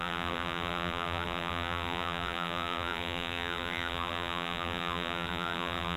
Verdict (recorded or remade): remade